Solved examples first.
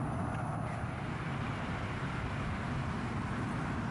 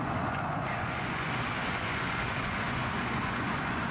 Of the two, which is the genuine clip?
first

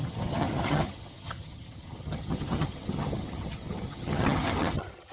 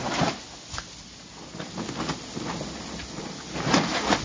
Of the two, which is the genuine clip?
second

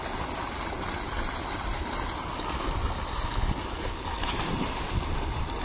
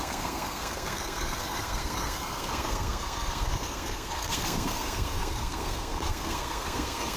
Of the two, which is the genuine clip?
first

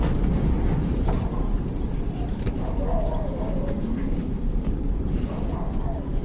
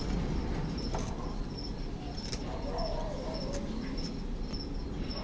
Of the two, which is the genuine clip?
second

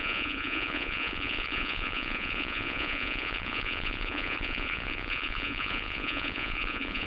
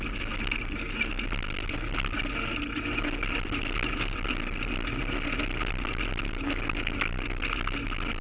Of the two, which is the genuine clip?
second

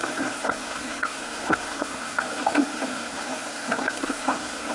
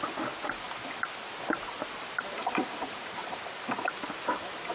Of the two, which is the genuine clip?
second